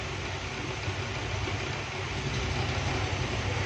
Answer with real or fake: real